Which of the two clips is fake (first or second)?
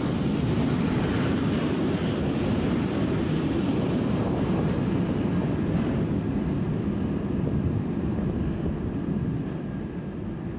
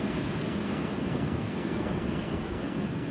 second